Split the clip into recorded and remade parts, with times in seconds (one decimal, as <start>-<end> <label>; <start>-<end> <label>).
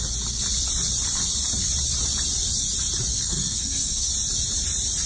0.0-3.1 recorded; 3.1-4.1 remade; 4.1-5.1 recorded